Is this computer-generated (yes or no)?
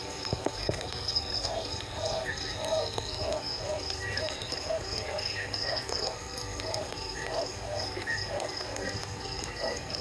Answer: yes